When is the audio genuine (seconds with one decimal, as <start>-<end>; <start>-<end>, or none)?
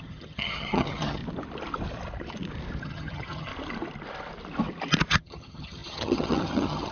1.2-2.8; 3.5-5.2